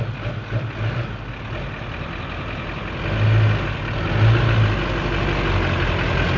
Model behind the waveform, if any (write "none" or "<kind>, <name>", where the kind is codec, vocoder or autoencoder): none